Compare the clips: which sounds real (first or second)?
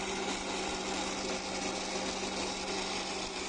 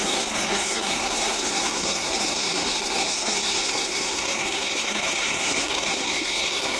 first